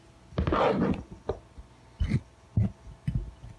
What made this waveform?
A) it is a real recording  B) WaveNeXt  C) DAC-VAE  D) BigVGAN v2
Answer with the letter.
A